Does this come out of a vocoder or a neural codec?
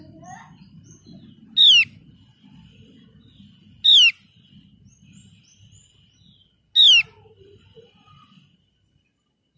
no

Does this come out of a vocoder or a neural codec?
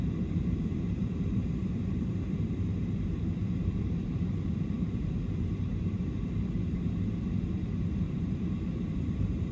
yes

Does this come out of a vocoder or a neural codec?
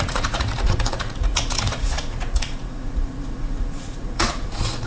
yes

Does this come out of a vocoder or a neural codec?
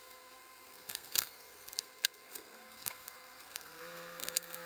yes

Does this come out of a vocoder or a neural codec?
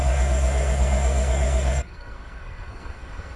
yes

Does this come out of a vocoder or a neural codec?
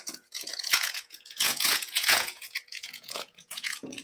yes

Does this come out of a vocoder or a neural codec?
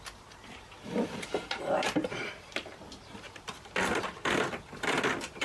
yes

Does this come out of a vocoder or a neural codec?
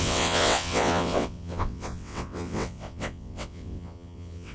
yes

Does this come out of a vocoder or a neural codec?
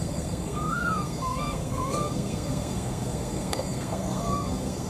yes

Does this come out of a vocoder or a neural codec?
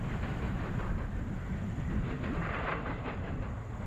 yes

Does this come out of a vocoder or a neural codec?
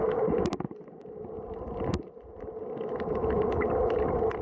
no